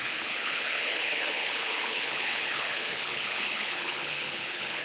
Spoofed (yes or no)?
yes